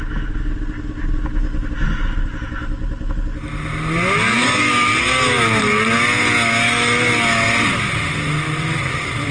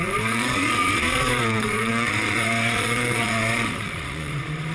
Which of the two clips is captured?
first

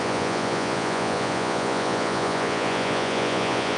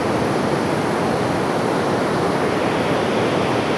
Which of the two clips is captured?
second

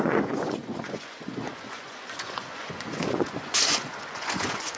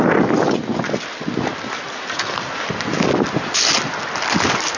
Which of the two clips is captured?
second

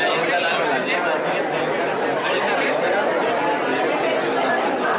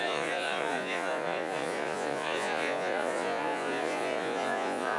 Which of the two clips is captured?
first